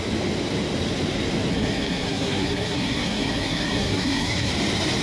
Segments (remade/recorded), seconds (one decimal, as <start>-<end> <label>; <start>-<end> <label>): 0.0-1.5 recorded; 1.5-4.5 remade; 4.5-5.0 recorded

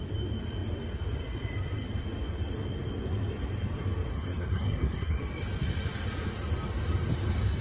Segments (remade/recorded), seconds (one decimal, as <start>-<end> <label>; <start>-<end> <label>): 0.0-4.1 recorded; 4.1-5.2 remade; 5.2-7.6 recorded

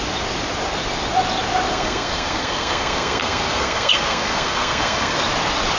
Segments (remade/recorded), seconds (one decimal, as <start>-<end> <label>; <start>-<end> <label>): 0.0-1.7 recorded; 1.7-5.2 remade; 5.2-5.8 recorded

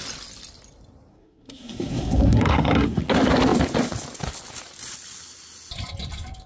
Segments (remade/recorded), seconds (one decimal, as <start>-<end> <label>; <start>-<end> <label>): 0.0-1.1 recorded; 1.1-3.0 remade; 3.0-6.5 recorded

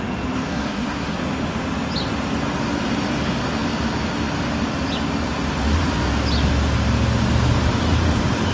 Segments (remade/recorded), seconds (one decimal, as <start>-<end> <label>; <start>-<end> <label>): 0.0-0.5 recorded; 0.5-1.2 remade; 1.2-8.5 recorded

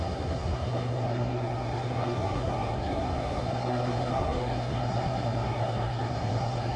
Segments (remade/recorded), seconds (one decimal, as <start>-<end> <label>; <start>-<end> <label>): 0.0-6.8 remade